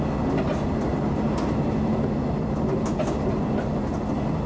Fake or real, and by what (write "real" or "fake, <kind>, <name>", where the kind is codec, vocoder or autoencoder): real